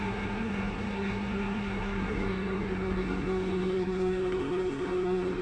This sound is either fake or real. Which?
fake